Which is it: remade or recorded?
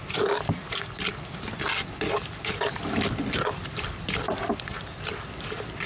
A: recorded